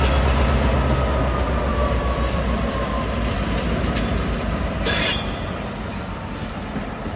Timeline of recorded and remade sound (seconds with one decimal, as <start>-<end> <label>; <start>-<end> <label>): 0.0-1.7 recorded; 1.7-6.0 remade; 6.0-7.2 recorded